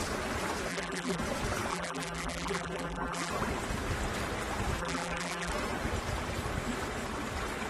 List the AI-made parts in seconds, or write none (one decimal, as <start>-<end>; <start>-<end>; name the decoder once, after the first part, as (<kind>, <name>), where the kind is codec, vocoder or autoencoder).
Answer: 0.7-1.2 (vocoder, BigVGAN v2); 1.7-3.3; 4.8-5.5